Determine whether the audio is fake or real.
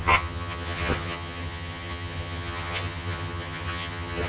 fake